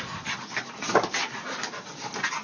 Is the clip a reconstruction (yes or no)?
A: no